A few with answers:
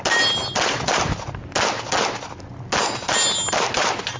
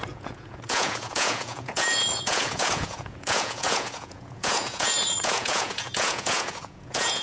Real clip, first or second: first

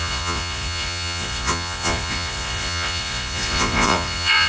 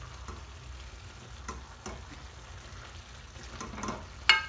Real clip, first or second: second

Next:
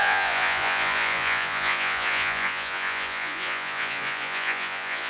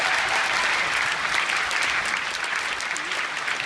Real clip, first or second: second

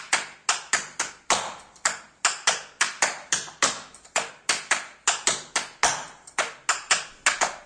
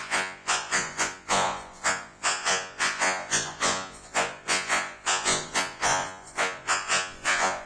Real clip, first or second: first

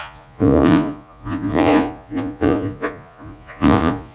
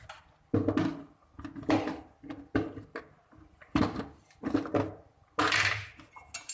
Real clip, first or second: second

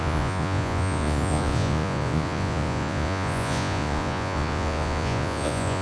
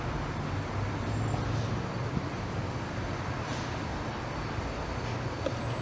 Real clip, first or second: second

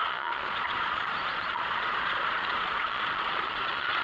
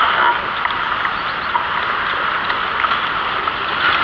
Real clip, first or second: second